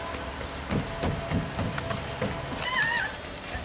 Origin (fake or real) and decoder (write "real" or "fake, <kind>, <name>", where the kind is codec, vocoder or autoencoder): real